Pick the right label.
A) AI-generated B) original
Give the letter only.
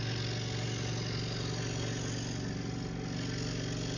B